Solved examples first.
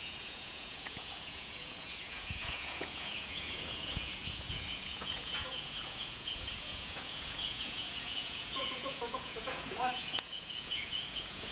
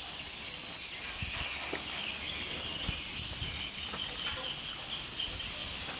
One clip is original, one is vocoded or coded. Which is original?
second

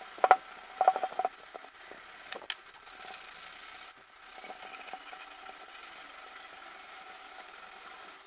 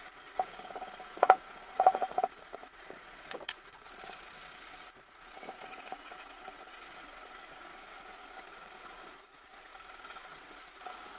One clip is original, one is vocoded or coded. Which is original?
first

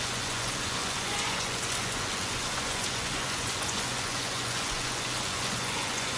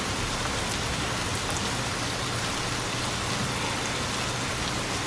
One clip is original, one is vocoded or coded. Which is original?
second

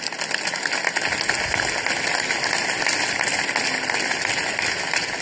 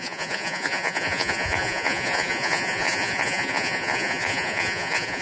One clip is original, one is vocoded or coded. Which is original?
first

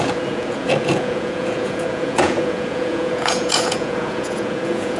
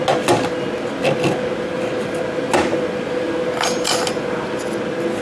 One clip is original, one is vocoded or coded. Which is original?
second